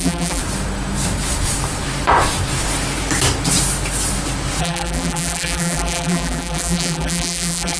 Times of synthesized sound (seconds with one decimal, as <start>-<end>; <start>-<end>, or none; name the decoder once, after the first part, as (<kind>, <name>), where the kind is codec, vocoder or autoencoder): 0.0-0.4 (vocoder, BigVGAN v2); 4.6-7.8